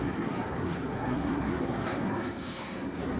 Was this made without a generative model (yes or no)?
no